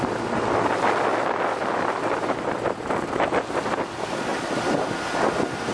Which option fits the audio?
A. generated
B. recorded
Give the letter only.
B